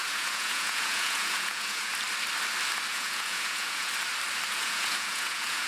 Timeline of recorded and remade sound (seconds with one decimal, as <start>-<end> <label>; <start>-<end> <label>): 0.0-1.9 remade; 1.9-2.9 recorded; 2.9-3.9 remade; 3.9-4.5 recorded; 4.5-5.7 remade